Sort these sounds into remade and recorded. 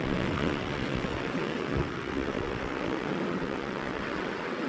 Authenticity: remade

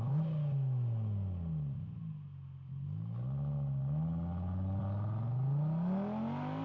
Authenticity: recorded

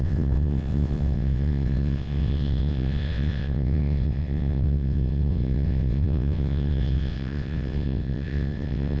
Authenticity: remade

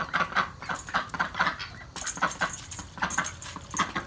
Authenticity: recorded